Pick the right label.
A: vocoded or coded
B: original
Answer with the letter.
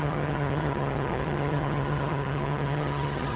A